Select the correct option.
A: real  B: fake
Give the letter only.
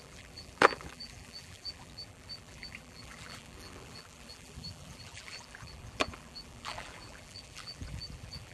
B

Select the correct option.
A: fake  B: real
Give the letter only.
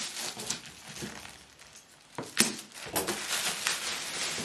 B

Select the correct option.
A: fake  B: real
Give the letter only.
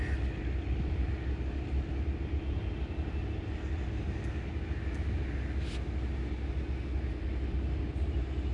B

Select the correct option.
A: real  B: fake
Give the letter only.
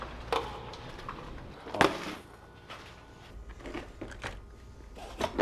A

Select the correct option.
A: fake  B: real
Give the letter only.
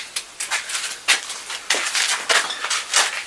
B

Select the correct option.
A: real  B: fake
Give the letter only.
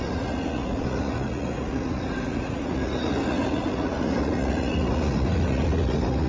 B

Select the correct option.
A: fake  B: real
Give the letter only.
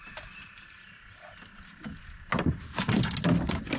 B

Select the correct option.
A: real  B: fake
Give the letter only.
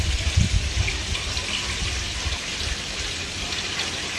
A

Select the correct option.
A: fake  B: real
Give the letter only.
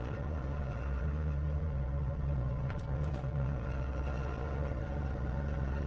A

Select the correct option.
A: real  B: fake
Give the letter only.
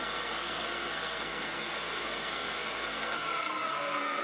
B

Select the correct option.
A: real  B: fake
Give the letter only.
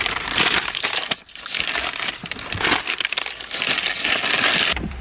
A